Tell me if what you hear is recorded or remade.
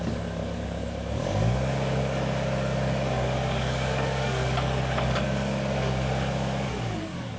remade